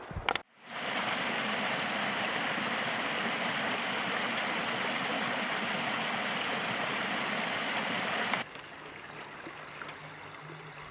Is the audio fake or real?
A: real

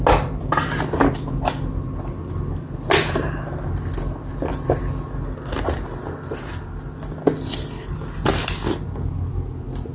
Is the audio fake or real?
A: real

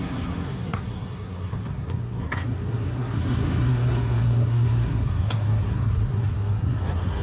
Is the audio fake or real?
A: fake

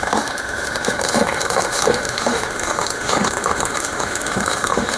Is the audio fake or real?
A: fake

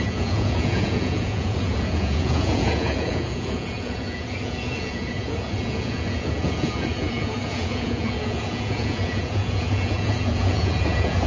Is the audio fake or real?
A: fake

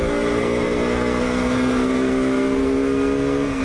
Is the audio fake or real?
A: fake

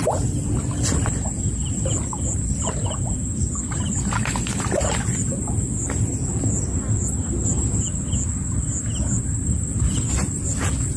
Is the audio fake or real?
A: real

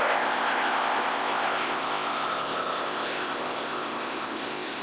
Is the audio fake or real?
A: fake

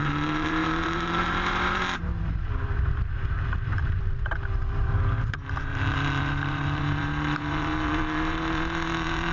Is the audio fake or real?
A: fake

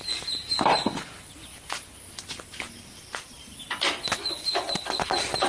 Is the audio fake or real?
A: real